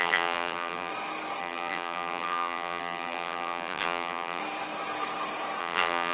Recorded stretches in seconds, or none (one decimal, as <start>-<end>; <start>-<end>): 0.9-1.4; 4.4-5.6